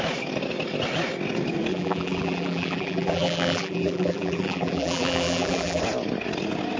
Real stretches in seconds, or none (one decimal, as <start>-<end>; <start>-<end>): 0.0-1.7; 5.8-6.8